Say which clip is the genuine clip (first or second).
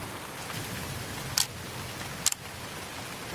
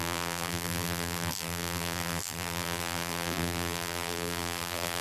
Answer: first